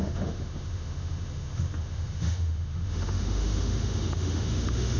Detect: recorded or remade remade